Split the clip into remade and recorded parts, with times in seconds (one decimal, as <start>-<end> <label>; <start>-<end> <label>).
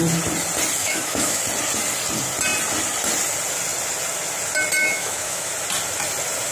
0.0-0.8 recorded; 0.8-1.4 remade; 1.4-4.8 recorded; 4.8-5.5 remade; 5.5-6.5 recorded